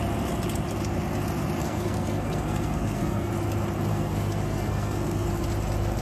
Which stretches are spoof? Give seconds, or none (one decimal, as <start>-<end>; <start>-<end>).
1.6-3.3; 3.9-5.3